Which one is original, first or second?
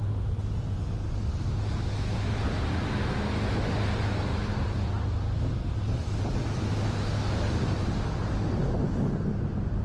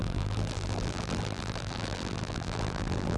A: first